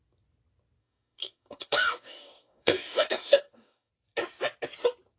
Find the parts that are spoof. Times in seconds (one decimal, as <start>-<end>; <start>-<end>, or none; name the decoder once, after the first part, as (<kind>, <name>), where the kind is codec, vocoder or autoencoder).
0.8-3.9 (codec, DAC)